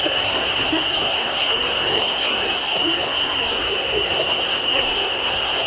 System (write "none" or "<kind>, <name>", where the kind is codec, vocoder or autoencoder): codec, SNAC